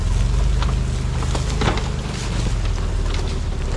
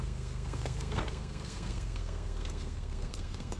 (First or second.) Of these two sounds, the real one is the first